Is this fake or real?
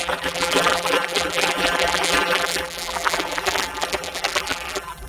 fake